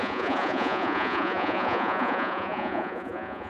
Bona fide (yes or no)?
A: no